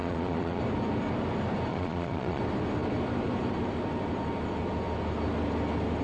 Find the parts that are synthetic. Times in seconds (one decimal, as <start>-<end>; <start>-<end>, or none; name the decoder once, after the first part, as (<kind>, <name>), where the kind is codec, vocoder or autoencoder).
0.0-0.6 (vocoder, Vocos); 1.7-2.4